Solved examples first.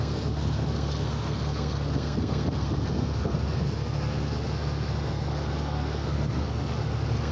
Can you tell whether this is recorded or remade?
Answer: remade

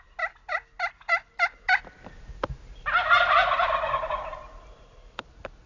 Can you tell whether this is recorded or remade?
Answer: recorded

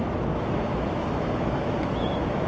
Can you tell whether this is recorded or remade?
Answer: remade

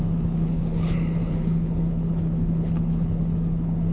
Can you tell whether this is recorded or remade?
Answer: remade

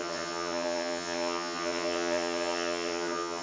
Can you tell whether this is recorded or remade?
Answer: remade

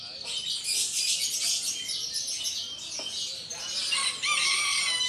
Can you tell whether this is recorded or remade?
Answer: recorded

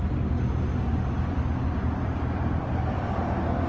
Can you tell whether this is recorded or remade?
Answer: recorded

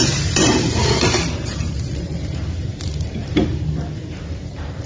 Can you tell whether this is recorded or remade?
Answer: remade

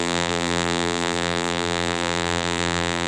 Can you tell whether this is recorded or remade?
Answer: remade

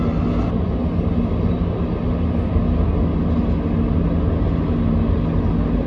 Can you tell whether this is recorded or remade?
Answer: recorded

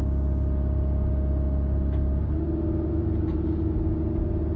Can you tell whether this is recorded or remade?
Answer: recorded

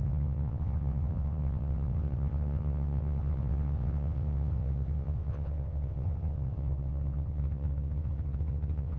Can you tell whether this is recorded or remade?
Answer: remade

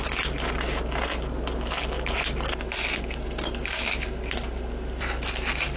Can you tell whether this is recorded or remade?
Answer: recorded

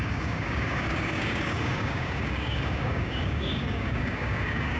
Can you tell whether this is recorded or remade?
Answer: remade